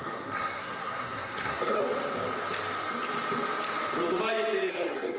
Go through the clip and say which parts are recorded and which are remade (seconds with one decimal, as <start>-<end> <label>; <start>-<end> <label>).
0.0-1.8 remade; 1.8-4.7 recorded; 4.7-5.2 remade